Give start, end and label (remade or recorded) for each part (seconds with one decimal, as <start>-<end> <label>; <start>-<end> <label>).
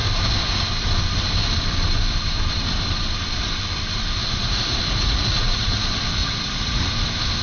0.0-4.2 recorded; 4.2-5.8 remade; 5.8-6.2 recorded; 6.2-6.8 remade; 6.8-7.4 recorded